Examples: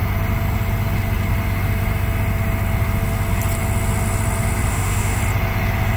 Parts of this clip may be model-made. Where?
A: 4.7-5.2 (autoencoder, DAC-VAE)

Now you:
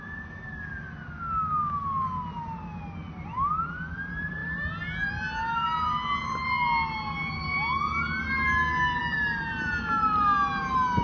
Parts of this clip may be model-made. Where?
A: none

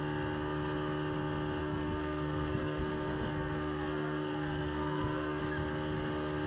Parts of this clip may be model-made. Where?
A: 1.6-5.4 (codec, SNAC)

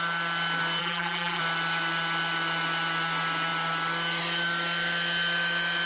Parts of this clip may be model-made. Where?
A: 0.8-1.4 (vocoder, BigVGAN v2)

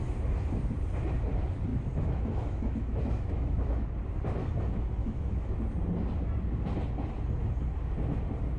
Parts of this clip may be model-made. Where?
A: 1.7-3.9 (autoencoder, DAC-VAE); 5.0-5.5